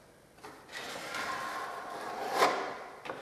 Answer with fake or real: real